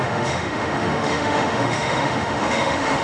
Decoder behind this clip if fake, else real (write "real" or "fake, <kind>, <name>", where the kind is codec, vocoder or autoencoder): fake, autoencoder, DAC-VAE